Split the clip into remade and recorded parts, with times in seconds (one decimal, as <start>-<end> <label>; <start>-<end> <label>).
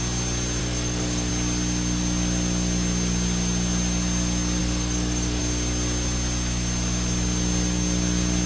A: 0.0-0.6 recorded; 0.6-1.3 remade; 1.3-4.6 recorded; 4.6-5.4 remade; 5.4-8.5 recorded